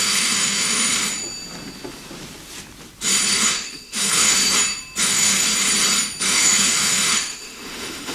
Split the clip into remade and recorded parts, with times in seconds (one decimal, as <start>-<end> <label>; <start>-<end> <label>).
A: 0.0-1.0 remade; 1.0-3.3 recorded; 3.3-4.4 remade; 4.4-5.0 recorded; 5.0-5.5 remade; 5.5-6.2 recorded; 6.2-8.1 remade